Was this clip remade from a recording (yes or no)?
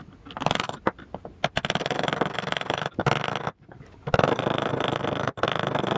no